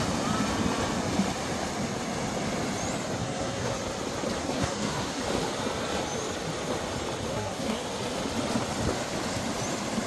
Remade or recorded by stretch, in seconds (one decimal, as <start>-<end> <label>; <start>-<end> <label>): 0.0-3.2 recorded; 3.2-3.8 remade; 3.8-4.4 recorded; 4.4-5.2 remade; 5.2-7.3 recorded; 7.3-7.8 remade; 7.8-10.1 recorded